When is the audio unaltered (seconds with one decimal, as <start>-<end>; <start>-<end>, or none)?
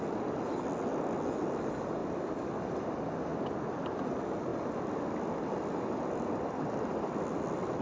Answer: 0.0-7.8